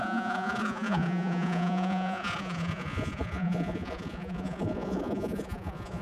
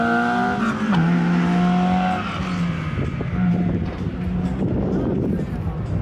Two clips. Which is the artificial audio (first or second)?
first